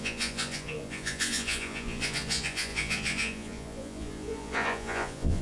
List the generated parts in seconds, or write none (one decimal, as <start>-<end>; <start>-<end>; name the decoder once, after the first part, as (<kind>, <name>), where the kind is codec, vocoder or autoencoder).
0.0-5.4 (vocoder, Vocos)